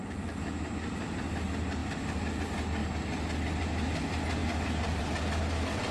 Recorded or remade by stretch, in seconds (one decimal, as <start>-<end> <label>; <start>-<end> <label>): 0.0-5.9 recorded